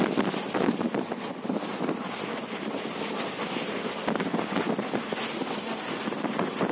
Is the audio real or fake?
real